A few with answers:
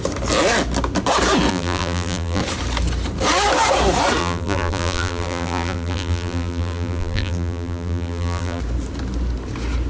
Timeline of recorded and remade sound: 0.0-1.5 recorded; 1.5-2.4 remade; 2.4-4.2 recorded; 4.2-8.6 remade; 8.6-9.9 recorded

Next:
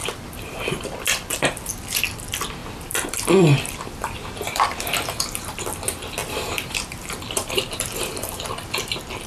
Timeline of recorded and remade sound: 0.0-1.7 remade; 1.7-2.6 recorded; 2.6-5.2 remade; 5.2-6.2 recorded; 6.2-8.1 remade; 8.1-9.3 recorded

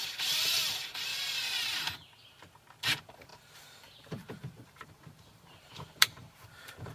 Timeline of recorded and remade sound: 0.0-1.1 remade; 1.1-2.8 recorded; 2.8-6.9 remade